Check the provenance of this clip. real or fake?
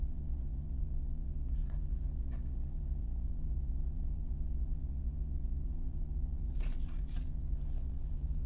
fake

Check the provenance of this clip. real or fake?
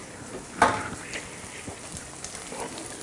real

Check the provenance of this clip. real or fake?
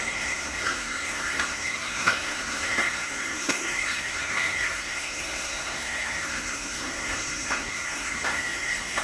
fake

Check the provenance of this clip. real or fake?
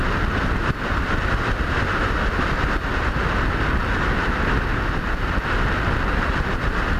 real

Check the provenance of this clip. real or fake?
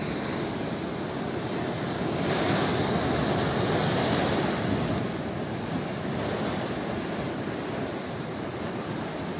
real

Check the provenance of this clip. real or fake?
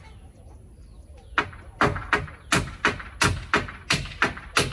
real